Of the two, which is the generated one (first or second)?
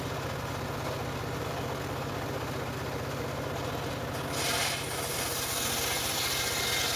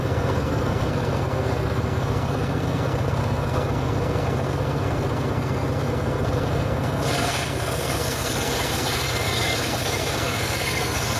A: second